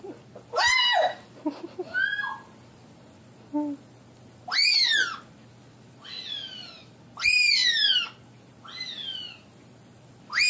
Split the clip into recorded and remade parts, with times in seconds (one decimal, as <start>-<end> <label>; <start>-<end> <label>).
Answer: 0.0-10.5 recorded